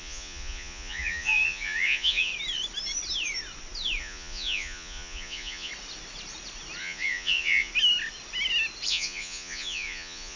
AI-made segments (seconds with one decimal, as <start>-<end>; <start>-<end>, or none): 0.0-2.3; 4.0-5.7; 6.8-7.7; 8.9-10.4

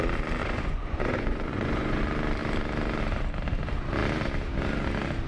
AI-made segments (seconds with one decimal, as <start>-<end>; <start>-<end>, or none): 0.4-2.0

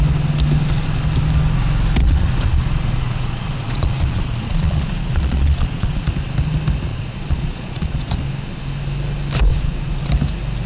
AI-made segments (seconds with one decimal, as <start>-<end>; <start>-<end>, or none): 2.0-6.1; 6.9-8.2; 9.5-10.1

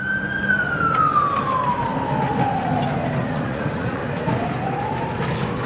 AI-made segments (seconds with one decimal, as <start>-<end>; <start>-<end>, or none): 3.2-4.0